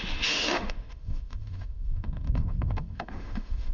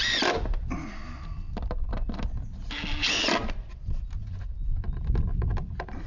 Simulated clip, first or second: first